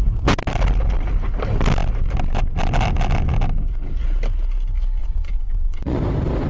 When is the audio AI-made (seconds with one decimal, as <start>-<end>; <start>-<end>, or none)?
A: 5.0-6.0